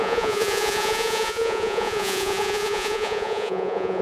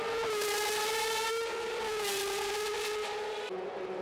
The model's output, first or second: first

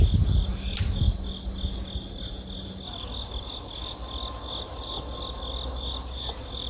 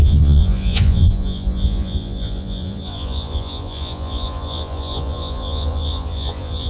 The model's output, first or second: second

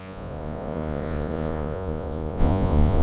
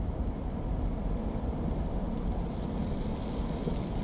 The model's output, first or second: first